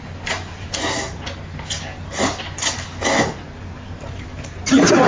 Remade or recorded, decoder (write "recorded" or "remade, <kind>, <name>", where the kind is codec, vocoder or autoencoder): recorded